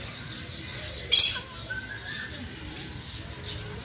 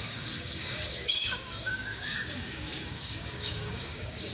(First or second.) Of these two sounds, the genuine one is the first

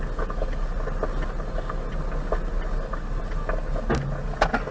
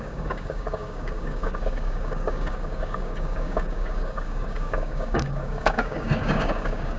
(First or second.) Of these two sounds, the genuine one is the first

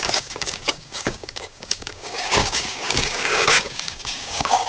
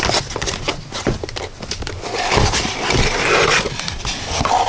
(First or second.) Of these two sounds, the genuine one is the second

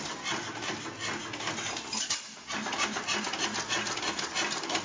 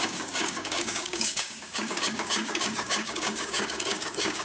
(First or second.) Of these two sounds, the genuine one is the first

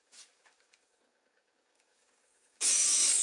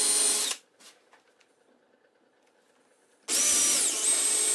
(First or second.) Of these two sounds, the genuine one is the second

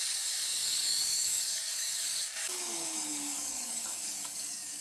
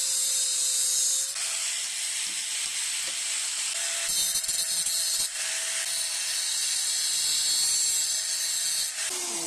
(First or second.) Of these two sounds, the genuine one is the second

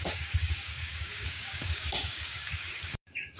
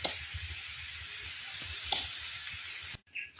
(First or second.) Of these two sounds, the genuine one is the second